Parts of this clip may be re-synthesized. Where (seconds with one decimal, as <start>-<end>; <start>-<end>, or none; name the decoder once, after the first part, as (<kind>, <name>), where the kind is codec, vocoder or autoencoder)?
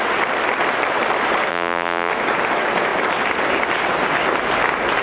1.5-2.1 (vocoder, BigVGAN v2)